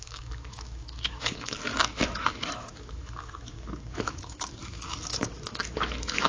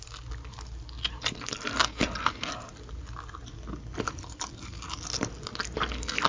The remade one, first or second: first